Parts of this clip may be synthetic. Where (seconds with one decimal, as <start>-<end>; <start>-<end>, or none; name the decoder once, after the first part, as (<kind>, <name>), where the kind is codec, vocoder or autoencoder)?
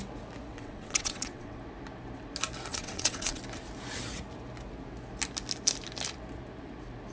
0.5-1.6 (vocoder, WaveNeXt); 2.7-3.4